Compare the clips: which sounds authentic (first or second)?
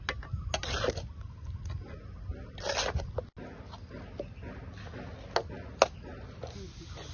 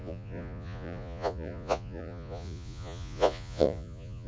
first